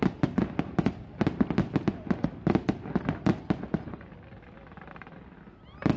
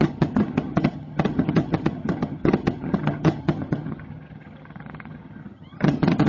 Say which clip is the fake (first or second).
second